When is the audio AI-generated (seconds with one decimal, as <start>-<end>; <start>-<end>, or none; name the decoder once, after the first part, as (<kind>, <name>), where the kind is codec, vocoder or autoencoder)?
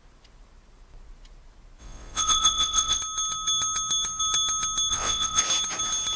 1.8-3.0 (vocoder, WaveNeXt); 4.9-5.4